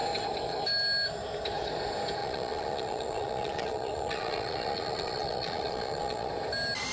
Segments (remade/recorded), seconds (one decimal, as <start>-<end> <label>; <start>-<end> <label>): 0.0-2.2 recorded; 2.2-6.3 remade; 6.3-6.9 recorded

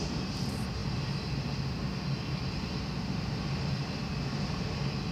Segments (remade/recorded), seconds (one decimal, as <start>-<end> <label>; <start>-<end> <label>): 0.0-5.1 recorded

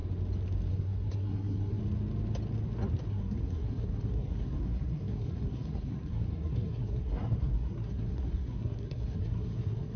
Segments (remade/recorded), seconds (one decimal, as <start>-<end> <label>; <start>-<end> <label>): 0.0-0.7 recorded; 0.7-1.8 remade; 1.8-3.1 recorded; 3.1-10.0 remade

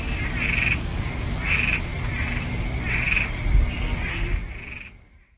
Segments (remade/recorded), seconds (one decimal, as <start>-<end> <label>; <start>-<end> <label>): 0.0-5.4 recorded

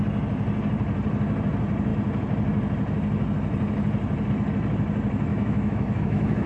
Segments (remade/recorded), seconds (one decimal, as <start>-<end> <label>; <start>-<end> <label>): 0.0-5.3 recorded; 5.3-6.5 remade

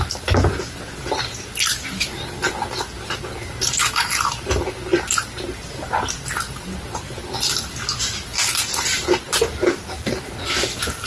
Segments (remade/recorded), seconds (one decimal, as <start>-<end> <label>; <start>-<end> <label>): 0.0-11.1 recorded

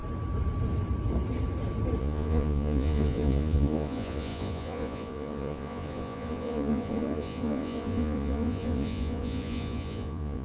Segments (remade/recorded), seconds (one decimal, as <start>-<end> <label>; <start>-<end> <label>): 0.0-2.0 recorded; 2.0-10.4 remade

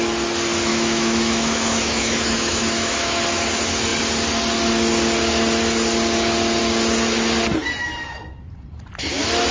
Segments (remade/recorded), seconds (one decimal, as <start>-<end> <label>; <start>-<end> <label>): 0.0-0.7 recorded; 0.7-3.2 remade; 3.2-9.5 recorded